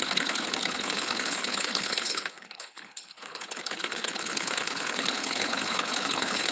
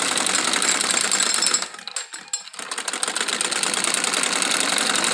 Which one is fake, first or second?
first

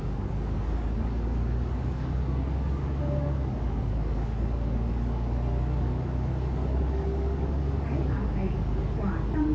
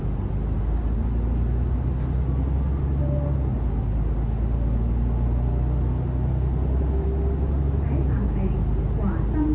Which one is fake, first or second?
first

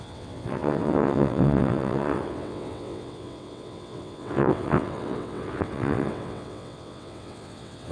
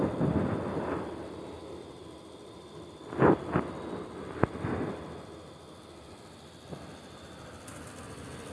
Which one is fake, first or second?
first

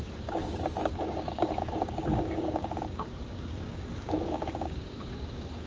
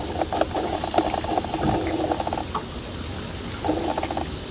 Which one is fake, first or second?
first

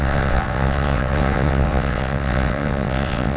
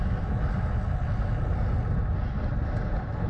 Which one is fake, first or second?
first